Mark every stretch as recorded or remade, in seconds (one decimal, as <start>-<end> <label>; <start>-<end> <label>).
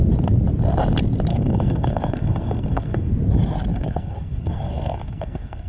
0.0-1.3 recorded; 1.3-3.1 remade; 3.1-3.7 recorded; 3.7-5.7 remade